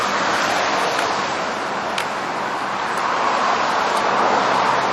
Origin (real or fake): real